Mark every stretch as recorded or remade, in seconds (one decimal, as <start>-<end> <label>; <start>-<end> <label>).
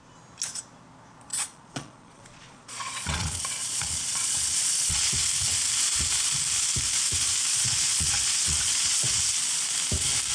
0.0-1.3 recorded; 1.3-5.1 remade; 5.1-7.5 recorded; 7.5-9.2 remade; 9.2-10.3 recorded